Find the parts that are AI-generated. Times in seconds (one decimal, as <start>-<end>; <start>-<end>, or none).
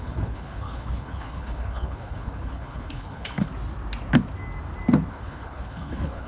0.0-3.5; 5.1-6.3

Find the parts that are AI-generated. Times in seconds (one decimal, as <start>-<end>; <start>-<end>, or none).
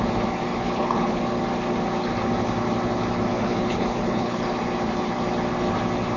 0.5-1.2; 3.3-4.4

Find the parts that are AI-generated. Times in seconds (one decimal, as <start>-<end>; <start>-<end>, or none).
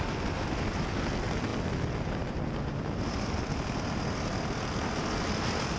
none